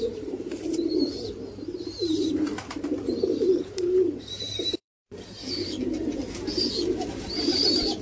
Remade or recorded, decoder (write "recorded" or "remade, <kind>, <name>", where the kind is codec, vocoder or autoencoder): remade, vocoder, BigVGAN v2